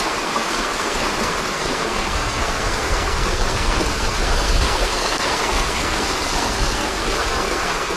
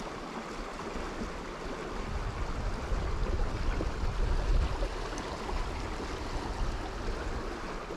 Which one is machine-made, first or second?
first